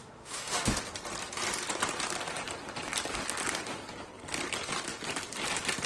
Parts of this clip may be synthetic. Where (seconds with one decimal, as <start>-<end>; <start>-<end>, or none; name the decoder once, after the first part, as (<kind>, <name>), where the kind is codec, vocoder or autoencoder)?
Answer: 0.0-0.8 (autoencoder, DAC-VAE)

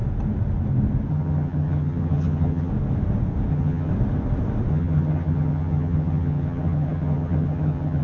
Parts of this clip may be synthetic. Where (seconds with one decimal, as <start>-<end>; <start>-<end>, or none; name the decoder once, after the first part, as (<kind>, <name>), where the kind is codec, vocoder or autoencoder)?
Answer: 1.1-2.7 (vocoder, HiFi-GAN); 3.5-3.9; 4.7-8.0

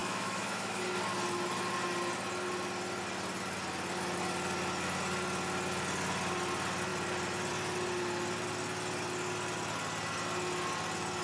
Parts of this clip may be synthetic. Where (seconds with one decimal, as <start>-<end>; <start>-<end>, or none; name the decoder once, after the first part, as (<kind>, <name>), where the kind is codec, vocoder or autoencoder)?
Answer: 0.0-0.8 (autoencoder, DAC-VAE)

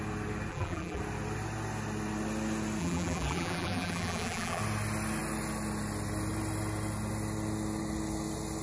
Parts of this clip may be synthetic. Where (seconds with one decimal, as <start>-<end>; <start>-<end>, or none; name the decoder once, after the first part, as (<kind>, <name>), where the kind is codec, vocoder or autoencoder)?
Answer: 0.5-1.0 (vocoder, BigVGAN v2); 2.8-4.6

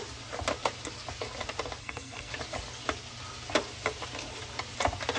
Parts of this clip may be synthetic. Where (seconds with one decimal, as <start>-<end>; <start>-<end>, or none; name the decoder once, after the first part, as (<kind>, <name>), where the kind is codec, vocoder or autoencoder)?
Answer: 1.8-2.3 (codec, SNAC)

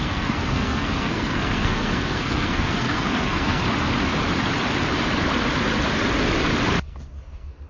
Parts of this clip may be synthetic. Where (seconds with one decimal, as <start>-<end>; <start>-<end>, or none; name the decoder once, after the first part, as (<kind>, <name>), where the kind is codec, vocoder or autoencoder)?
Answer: 0.0-3.6 (codec, SNAC); 6.8-7.7